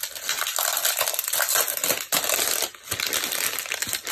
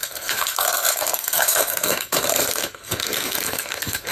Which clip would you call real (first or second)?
first